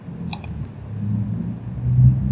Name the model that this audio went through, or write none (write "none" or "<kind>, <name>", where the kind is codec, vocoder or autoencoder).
none